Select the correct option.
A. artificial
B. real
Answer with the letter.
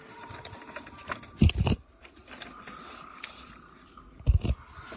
B